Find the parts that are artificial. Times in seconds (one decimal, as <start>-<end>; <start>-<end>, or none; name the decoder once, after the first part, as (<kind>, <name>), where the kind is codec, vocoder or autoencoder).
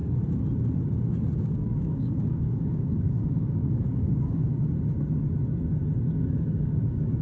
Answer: 1.4-4.5 (codec, DAC); 6.2-7.2